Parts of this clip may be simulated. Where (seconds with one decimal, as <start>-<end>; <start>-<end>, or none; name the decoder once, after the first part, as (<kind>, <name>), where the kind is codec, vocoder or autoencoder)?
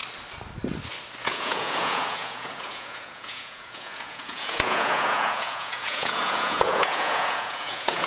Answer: 1.2-8.1 (vocoder, Vocos)